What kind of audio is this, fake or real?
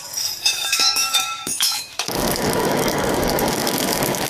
fake